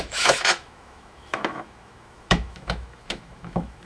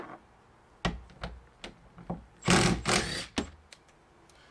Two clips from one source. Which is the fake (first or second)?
first